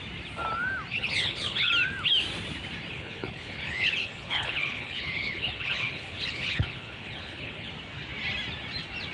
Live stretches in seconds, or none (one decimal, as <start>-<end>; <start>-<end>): 0.0-0.9; 1.7-2.9; 7.7-9.1